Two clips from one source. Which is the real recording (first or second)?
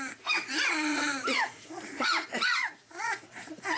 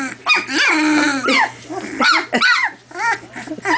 second